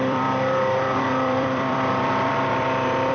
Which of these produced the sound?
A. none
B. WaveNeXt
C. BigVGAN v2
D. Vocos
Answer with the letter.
C